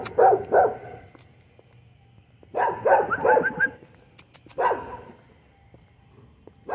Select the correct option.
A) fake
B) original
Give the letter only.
B